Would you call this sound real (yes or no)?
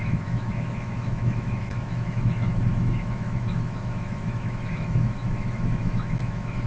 no